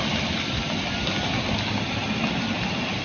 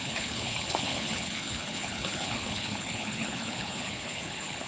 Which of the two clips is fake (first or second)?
second